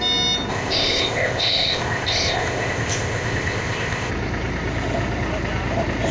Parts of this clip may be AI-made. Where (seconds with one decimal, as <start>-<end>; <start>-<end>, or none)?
0.5-4.1